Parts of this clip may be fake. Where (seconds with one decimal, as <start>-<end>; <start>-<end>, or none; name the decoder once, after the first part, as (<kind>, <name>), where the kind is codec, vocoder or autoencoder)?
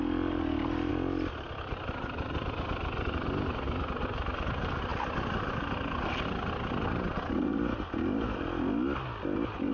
none